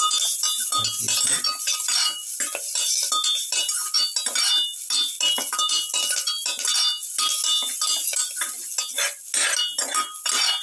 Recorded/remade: recorded